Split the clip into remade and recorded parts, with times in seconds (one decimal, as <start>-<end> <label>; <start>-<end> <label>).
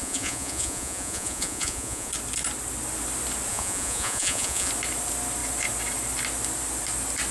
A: 0.0-2.1 remade; 2.1-3.5 recorded; 3.5-4.7 remade; 4.7-7.3 recorded